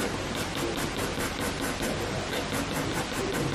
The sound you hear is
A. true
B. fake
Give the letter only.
A